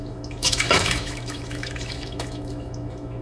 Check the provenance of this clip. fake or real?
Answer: fake